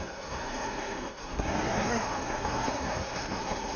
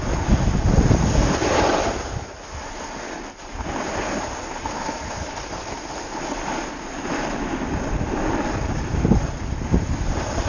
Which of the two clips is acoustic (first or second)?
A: second